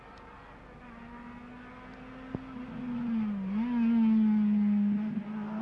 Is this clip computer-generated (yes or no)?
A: no